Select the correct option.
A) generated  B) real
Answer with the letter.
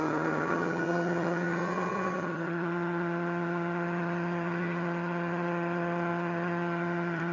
A